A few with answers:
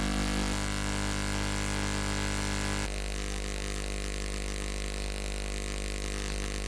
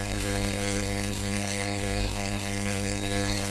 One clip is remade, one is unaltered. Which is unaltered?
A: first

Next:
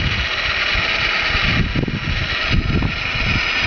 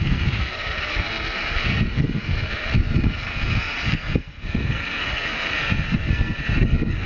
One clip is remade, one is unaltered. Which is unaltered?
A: first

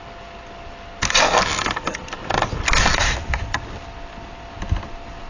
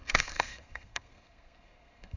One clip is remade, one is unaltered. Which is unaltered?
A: first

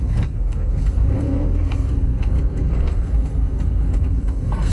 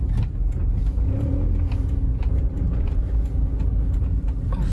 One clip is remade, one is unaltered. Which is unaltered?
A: second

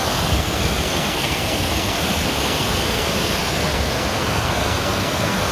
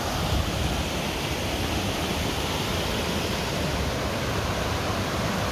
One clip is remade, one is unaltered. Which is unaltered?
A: second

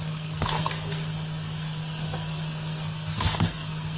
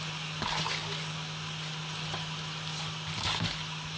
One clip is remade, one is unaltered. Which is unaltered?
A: second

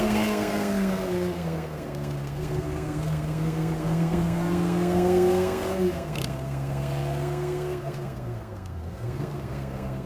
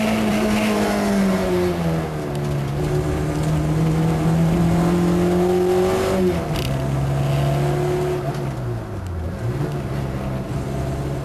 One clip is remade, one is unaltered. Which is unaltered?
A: second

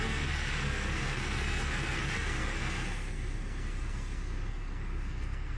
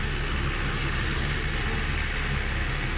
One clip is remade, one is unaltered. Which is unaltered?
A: second